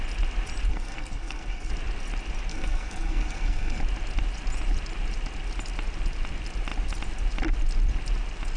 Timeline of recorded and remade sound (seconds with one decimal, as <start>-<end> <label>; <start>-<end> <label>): 0.0-0.7 recorded; 0.7-1.7 remade; 1.7-2.5 recorded; 2.5-3.8 remade; 3.8-8.6 recorded